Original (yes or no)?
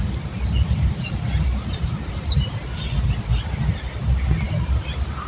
yes